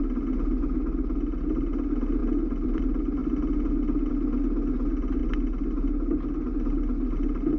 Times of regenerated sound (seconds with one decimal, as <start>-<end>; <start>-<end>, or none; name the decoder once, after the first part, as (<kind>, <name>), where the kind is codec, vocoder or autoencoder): 2.2-2.8 (vocoder, BigVGAN v2)